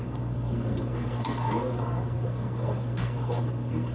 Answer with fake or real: fake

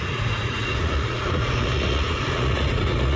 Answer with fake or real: fake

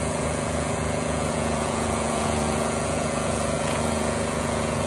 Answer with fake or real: fake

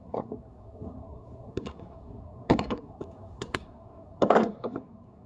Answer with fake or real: fake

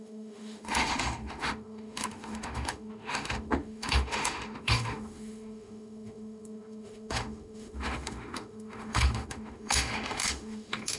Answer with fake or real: fake